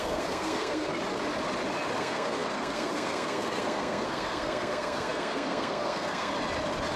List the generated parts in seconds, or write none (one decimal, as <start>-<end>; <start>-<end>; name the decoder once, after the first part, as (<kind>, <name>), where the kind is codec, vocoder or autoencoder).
0.0-0.9 (codec, SNAC); 2.0-6.3